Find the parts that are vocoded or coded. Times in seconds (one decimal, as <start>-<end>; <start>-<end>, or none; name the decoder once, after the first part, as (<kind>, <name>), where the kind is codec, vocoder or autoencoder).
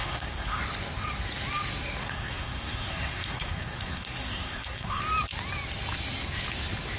0.0-0.6 (codec, SNAC); 2.0-5.0